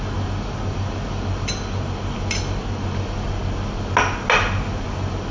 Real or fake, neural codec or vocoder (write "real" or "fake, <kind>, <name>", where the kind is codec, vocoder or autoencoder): real